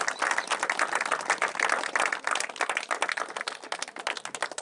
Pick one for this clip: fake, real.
real